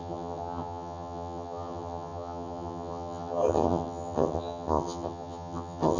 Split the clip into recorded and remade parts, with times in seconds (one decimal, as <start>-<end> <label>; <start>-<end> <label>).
0.0-6.0 remade